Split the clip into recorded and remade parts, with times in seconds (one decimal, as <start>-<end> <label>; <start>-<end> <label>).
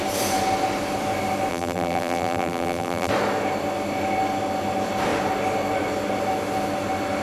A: 0.0-1.5 recorded; 1.5-3.1 remade; 3.1-7.2 recorded